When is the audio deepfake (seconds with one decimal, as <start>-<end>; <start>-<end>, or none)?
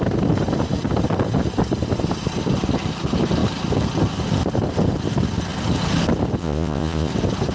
6.4-7.1